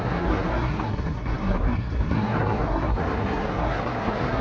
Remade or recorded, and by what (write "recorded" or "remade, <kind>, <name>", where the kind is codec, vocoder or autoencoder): remade, codec, SNAC